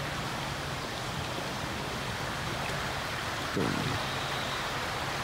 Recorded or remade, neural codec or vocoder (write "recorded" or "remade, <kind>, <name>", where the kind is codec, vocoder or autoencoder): recorded